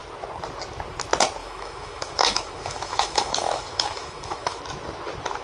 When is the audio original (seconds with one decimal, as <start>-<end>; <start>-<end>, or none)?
0.0-1.4; 4.6-5.4